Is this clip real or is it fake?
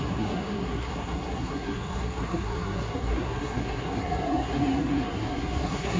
fake